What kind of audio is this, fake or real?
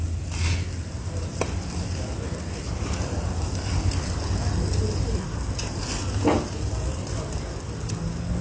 real